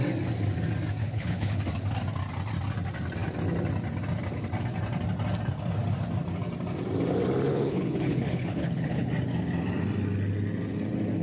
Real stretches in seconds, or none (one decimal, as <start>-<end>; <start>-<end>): 0.0-1.0; 1.6-7.5; 9.1-11.2